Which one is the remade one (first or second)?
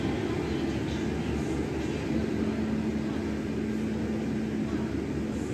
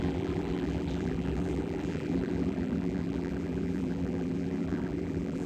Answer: second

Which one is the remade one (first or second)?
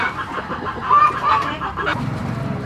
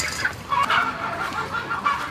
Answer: first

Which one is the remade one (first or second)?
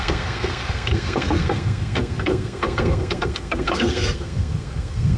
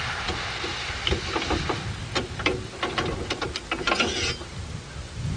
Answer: first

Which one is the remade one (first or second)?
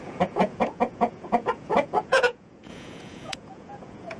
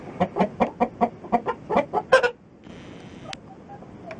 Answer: first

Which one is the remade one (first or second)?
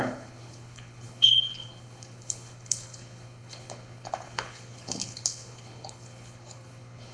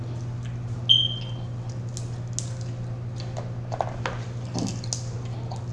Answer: first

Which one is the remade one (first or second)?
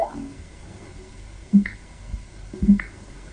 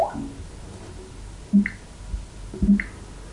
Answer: first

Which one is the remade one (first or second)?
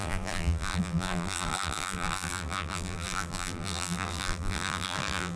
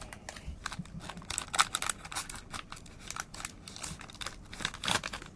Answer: first